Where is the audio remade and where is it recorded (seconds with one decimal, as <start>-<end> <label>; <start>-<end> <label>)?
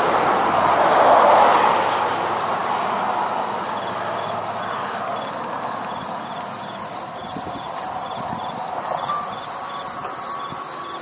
0.0-11.0 recorded